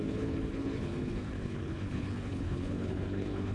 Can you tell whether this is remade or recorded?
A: remade